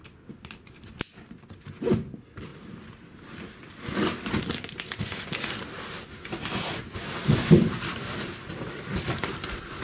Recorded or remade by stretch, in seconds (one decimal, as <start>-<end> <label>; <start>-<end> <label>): 0.0-2.5 recorded; 2.5-4.3 remade; 4.3-9.8 recorded